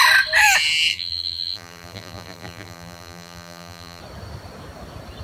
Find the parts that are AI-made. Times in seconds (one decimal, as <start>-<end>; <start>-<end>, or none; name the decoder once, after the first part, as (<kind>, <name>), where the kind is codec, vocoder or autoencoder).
0.9-4.0 (vocoder, BigVGAN v2)